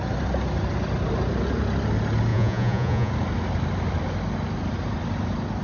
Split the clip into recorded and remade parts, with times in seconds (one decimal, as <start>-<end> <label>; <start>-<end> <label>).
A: 0.0-2.3 recorded; 2.3-3.1 remade; 3.1-5.6 recorded